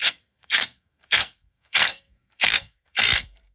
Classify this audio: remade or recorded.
remade